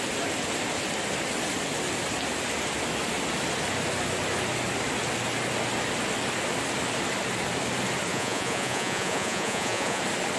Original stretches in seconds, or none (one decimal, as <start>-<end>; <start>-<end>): 0.0-8.1; 10.0-10.4